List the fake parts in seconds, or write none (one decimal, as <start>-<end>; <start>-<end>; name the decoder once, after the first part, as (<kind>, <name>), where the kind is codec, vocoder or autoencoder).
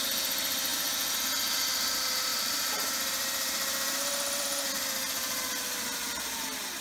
0.7-1.2 (vocoder, BigVGAN v2); 2.3-4.7